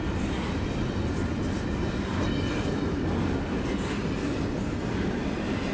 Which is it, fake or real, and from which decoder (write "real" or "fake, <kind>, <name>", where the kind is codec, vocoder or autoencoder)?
real